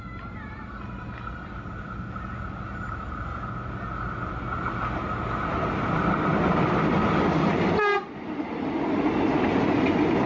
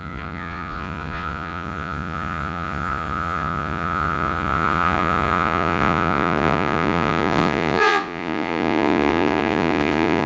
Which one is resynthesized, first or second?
second